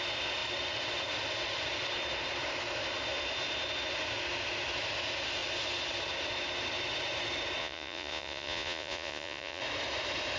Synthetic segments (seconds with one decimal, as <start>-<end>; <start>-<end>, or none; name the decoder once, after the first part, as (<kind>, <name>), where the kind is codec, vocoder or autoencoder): 7.6-9.6 (vocoder, Vocos)